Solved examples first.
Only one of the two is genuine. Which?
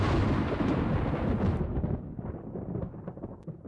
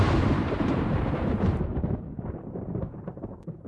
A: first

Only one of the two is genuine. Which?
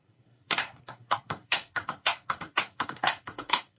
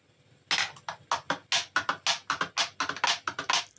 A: second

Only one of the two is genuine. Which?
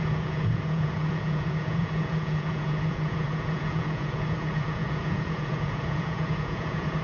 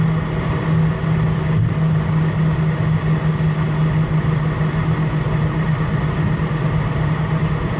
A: second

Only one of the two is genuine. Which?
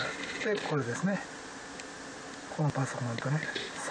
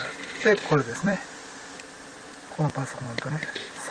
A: first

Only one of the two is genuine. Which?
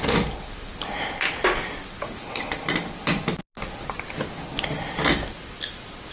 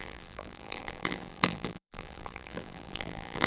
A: first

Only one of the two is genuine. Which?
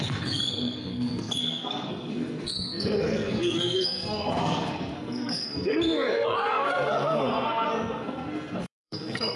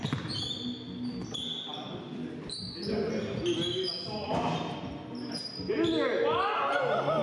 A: second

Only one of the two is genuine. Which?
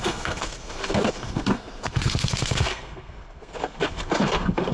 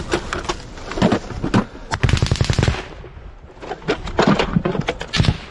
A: second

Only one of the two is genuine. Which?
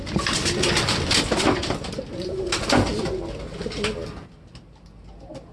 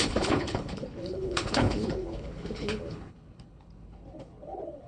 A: first